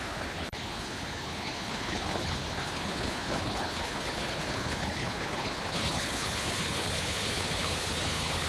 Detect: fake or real fake